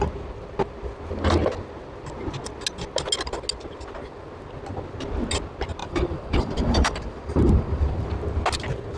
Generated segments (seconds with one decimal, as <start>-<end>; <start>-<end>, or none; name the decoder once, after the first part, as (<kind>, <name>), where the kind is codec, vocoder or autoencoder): 5.8-8.1 (vocoder, BigVGAN v2)